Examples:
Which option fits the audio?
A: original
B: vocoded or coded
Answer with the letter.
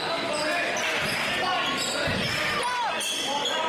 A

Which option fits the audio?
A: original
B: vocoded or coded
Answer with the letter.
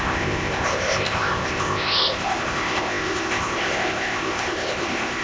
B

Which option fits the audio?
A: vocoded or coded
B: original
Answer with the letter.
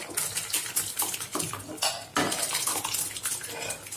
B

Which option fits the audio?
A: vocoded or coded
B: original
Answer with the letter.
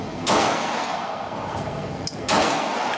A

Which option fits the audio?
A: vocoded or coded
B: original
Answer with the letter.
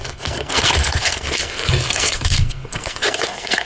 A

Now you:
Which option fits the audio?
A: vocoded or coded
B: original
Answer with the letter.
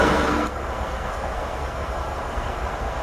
A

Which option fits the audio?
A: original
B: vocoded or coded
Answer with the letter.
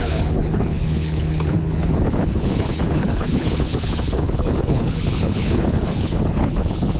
B